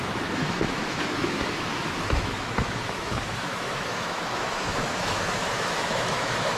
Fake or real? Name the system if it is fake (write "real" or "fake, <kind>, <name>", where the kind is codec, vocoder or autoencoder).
fake, autoencoder, DAC-VAE